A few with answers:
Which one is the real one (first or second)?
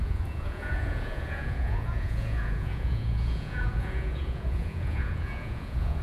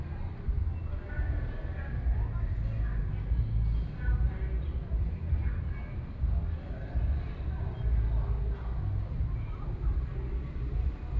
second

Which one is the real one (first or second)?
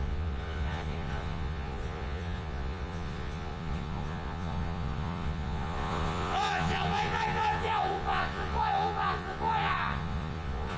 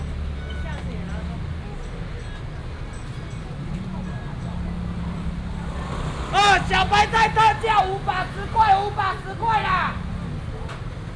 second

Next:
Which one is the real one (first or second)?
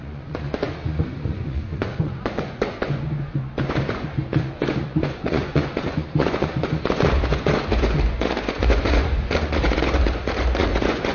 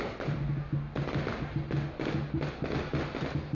second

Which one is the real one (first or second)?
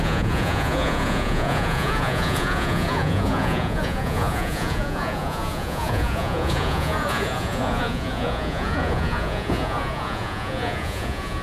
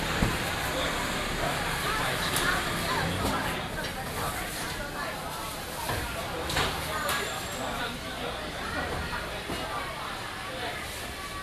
second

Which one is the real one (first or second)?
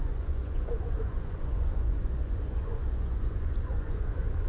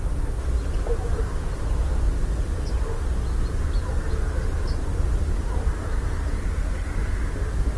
second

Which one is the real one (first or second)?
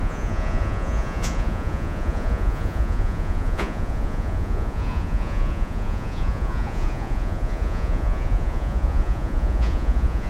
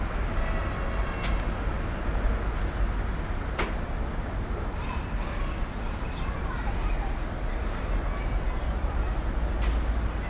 second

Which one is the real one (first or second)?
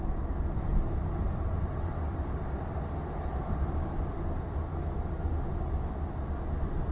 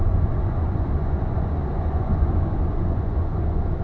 first